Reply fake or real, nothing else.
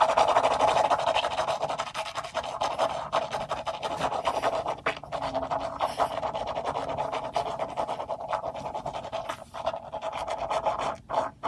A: real